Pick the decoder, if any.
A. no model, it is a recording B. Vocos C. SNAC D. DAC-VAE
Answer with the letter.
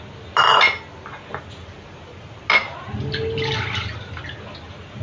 A